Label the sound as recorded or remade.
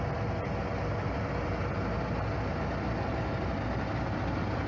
recorded